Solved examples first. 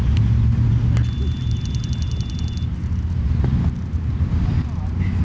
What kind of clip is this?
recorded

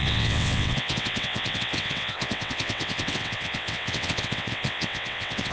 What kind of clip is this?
remade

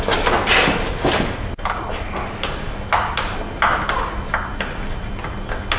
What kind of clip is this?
recorded